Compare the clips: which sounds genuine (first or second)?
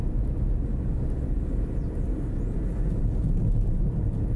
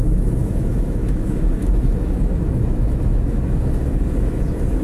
first